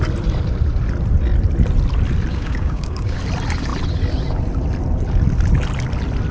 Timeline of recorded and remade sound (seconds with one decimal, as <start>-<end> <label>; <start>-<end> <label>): 0.0-2.3 recorded; 2.3-3.2 remade; 3.2-6.3 recorded